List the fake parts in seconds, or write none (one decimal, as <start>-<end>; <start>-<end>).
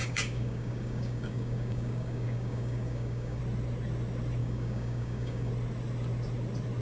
0.0-3.4; 4.4-5.5